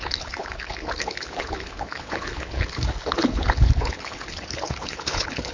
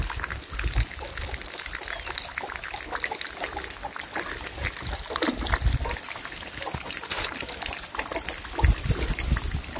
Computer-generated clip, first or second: first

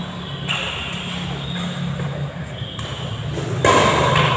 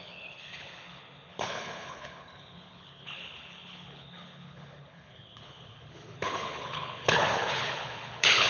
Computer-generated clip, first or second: second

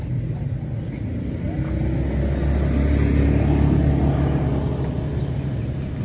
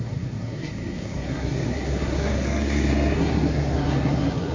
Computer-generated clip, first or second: second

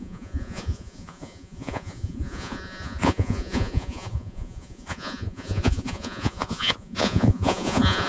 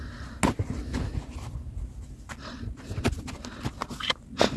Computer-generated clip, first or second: first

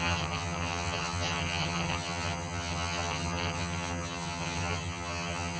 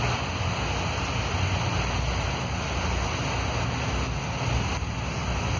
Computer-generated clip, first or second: first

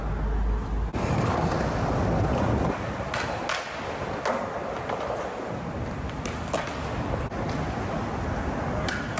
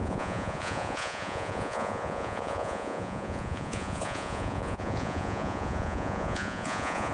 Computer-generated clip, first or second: second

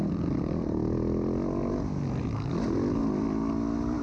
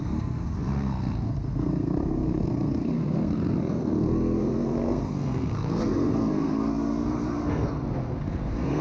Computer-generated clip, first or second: second